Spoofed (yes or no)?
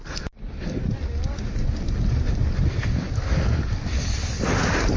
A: no